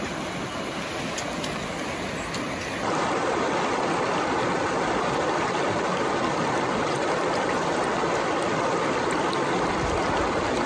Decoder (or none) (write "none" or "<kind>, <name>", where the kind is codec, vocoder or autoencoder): none